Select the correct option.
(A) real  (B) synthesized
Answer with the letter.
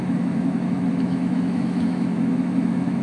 B